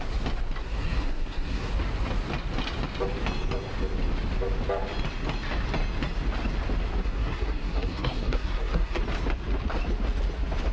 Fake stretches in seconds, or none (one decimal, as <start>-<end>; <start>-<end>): 0.6-1.7; 7.0-9.0